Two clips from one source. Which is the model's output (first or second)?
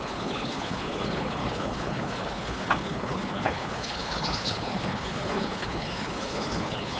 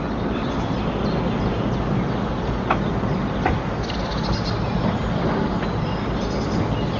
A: first